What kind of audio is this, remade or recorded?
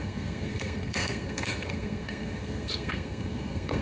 remade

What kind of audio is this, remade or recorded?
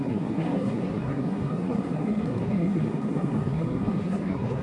remade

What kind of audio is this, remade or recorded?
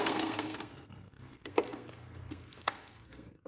remade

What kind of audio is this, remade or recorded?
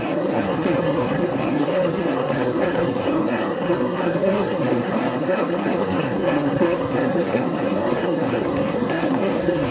remade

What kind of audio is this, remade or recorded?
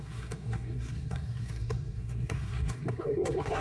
remade